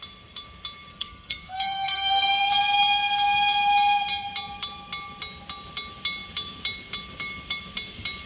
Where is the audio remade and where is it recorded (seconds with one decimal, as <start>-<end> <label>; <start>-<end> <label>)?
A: 0.0-0.9 recorded; 0.9-2.5 remade; 2.5-8.3 recorded